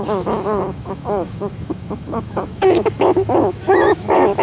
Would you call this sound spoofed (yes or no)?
yes